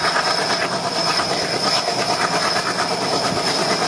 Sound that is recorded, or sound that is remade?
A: recorded